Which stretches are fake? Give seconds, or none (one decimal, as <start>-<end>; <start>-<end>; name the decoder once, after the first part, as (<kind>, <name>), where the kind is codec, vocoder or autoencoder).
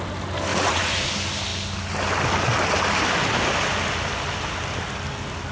0.5-1.1 (vocoder, Vocos)